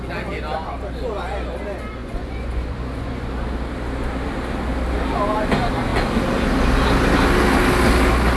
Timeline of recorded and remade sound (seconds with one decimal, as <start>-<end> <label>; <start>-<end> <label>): 0.0-2.0 recorded; 2.0-3.3 remade; 3.3-8.4 recorded